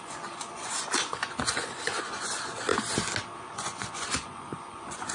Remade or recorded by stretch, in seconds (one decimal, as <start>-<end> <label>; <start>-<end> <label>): 0.0-2.7 remade; 2.7-3.4 recorded; 3.4-5.1 remade